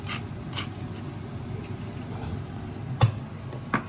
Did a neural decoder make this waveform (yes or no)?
no